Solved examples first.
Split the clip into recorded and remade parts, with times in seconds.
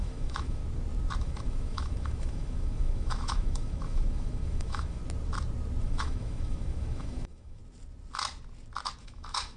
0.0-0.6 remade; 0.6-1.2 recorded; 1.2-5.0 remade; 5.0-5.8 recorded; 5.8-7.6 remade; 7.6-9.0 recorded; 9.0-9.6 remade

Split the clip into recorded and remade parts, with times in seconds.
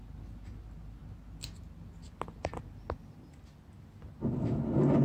0.0-5.0 recorded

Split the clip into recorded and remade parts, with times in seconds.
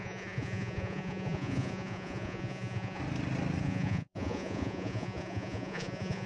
0.0-3.0 remade; 3.0-3.6 recorded; 3.6-6.3 remade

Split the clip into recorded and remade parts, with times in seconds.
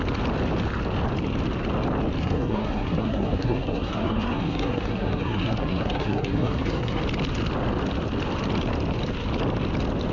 0.0-2.2 recorded; 2.2-7.0 remade; 7.0-10.1 recorded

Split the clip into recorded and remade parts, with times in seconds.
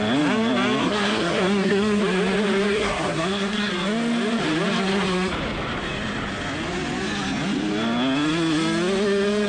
0.0-0.8 recorded; 0.8-2.0 remade; 2.0-2.7 recorded; 2.7-3.7 remade; 3.7-9.5 recorded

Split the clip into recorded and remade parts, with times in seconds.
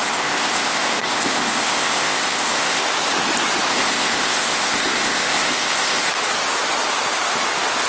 0.0-2.8 remade; 2.8-3.7 recorded; 3.7-6.1 remade; 6.1-7.9 recorded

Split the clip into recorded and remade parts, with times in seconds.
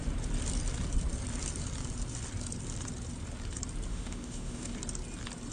0.0-3.9 recorded; 3.9-4.7 remade; 4.7-5.5 recorded